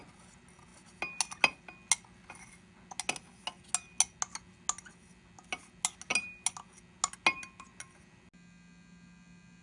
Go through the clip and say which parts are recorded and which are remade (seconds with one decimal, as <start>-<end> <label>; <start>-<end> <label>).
0.0-9.6 recorded